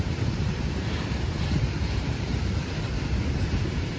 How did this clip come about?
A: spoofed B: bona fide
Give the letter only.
A